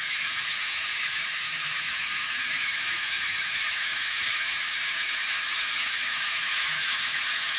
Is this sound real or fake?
fake